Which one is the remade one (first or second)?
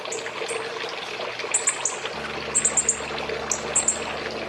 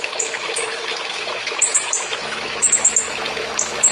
second